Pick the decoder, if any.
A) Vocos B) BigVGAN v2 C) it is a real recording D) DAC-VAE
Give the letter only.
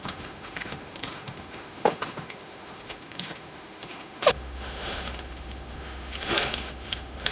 D